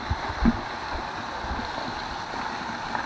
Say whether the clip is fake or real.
real